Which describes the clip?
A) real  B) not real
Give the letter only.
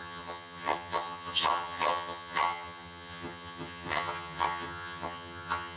B